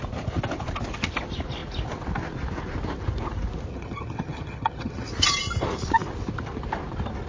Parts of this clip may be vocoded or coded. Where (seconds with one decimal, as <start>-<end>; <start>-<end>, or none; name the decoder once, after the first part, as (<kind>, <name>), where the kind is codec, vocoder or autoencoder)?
3.7-5.1 (vocoder, HiFi-GAN)

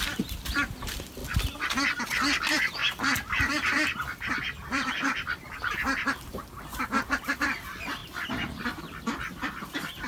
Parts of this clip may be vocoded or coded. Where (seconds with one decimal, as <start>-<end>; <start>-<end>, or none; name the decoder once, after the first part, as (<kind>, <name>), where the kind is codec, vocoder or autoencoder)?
0.0-1.2 (vocoder, BigVGAN v2); 2.2-10.1

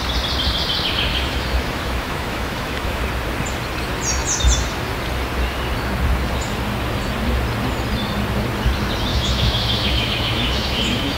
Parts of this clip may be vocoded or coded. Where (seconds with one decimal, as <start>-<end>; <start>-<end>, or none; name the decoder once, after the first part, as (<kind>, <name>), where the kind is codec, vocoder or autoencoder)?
1.1-3.0 (autoencoder, DAC-VAE); 9.1-11.2

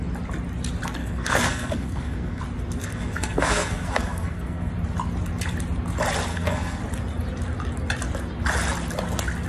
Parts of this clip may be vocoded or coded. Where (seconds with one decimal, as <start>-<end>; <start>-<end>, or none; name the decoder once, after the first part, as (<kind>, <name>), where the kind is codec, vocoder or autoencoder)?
1.0-2.4 (codec, SNAC); 2.8-4.7; 6.3-6.8